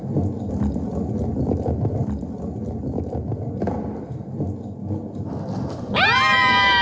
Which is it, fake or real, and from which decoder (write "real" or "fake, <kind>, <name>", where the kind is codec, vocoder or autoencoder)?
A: real